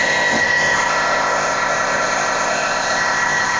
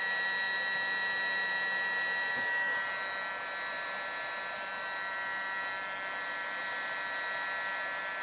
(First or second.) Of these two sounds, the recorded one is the second